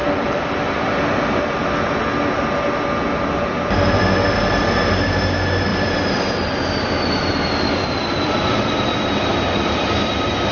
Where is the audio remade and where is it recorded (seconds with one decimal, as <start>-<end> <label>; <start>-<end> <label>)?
0.0-5.7 recorded; 5.7-9.3 remade; 9.3-10.5 recorded